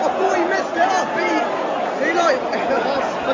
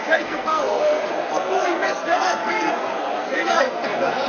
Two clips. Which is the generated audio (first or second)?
second